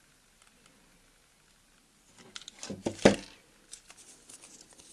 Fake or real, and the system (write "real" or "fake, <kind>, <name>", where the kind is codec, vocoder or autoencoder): real